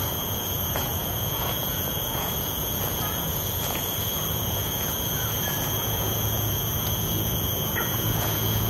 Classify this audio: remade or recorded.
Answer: remade